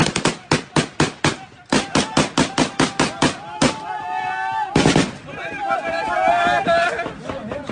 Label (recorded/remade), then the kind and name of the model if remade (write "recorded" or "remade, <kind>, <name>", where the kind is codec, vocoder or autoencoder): recorded